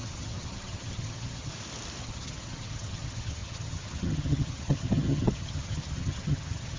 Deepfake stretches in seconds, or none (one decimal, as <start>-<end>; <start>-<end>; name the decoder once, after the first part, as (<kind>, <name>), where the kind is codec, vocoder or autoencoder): 0.0-1.5 (vocoder, HiFi-GAN); 2.0-6.8